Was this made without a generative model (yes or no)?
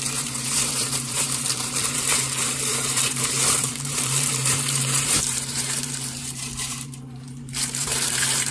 no